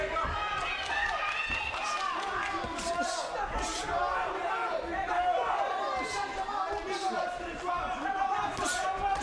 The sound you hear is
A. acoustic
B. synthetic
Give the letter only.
A